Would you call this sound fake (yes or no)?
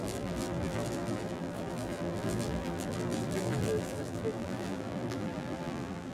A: yes